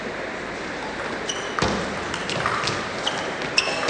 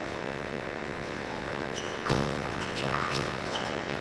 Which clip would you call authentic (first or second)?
first